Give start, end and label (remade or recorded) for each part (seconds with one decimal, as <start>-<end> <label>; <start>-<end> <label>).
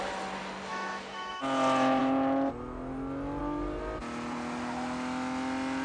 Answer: 0.0-0.7 recorded; 0.7-1.4 remade; 1.4-5.8 recorded